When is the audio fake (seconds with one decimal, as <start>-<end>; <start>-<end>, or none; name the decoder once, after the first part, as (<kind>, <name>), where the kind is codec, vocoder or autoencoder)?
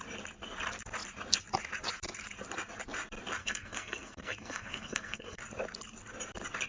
3.4-5.4 (codec, SNAC)